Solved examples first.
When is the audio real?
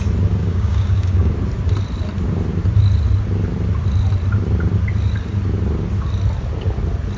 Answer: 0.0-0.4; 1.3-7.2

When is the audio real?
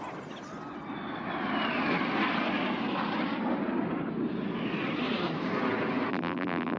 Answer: 0.0-6.1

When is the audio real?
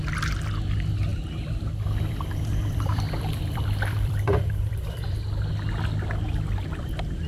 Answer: 0.0-1.1; 5.5-7.3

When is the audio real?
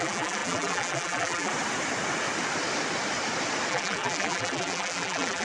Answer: 1.5-3.7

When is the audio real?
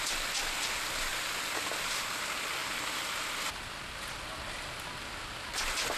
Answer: 0.0-6.0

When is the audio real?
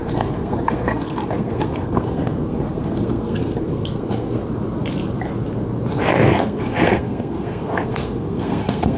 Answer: 4.4-5.9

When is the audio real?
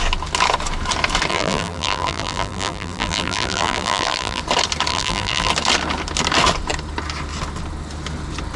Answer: 0.0-1.3; 4.4-4.9; 5.5-8.6